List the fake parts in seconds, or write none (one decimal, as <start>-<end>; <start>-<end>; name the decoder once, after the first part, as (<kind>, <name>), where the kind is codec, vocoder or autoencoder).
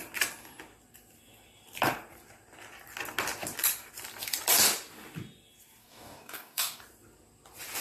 5.8-6.8 (codec, DAC)